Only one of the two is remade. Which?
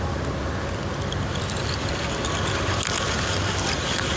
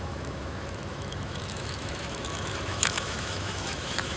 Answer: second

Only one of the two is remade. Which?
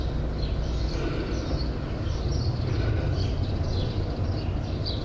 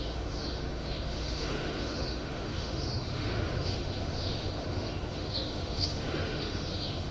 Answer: second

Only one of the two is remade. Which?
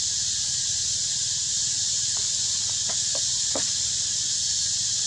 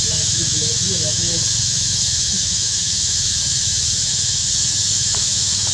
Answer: second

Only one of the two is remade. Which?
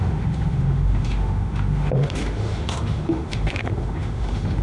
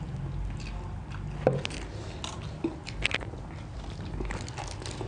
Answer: first